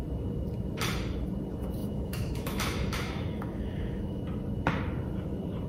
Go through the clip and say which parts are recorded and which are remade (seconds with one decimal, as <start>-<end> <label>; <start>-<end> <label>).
0.0-1.8 recorded; 1.8-4.2 remade; 4.2-5.7 recorded